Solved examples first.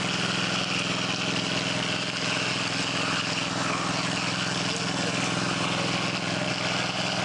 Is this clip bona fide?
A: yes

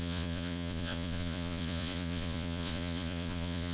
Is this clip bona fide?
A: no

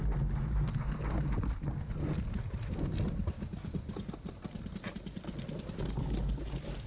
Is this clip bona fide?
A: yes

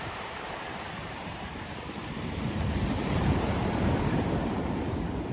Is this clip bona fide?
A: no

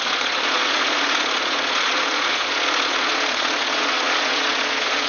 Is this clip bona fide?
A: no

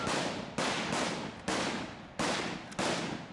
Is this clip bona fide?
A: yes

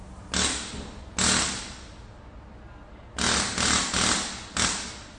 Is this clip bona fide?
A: yes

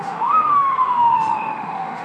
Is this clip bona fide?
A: no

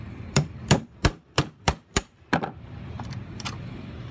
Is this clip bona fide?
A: no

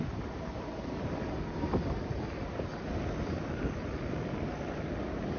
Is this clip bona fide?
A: yes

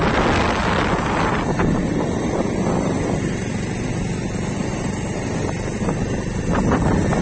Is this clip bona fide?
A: yes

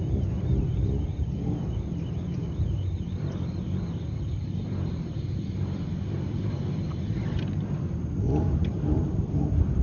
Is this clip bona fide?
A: no